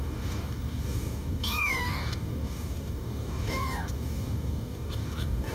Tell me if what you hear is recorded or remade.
remade